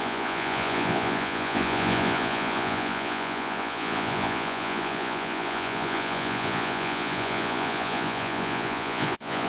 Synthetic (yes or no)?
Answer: yes